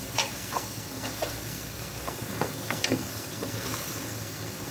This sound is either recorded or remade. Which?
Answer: remade